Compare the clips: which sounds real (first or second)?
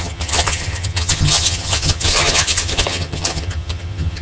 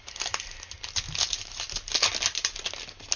second